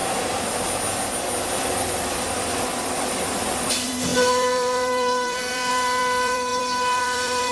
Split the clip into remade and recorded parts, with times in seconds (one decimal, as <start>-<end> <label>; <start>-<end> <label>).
0.0-1.6 recorded; 1.6-7.5 remade